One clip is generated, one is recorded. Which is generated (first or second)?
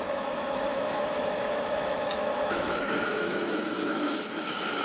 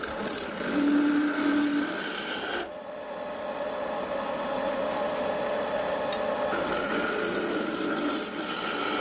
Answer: first